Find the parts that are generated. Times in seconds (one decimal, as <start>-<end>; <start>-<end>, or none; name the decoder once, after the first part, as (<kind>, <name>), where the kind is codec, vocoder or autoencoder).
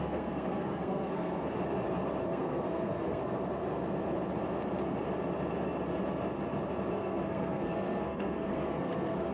0.0-1.4 (codec, SNAC); 2.2-3.2; 6.9-9.3